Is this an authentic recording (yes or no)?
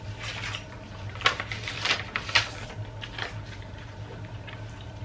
yes